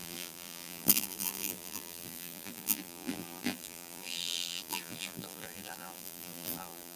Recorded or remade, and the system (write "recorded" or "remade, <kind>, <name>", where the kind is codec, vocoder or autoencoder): remade, vocoder, BigVGAN v2